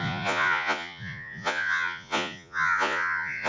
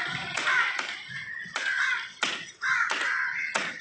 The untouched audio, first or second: second